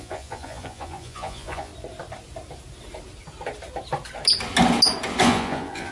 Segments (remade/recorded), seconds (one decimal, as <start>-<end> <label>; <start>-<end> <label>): 0.0-1.7 remade; 1.7-5.2 recorded; 5.2-5.9 remade